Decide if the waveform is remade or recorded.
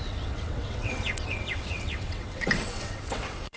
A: remade